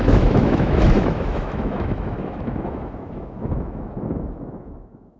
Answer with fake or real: fake